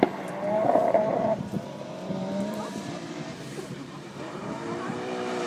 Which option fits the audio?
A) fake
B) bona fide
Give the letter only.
A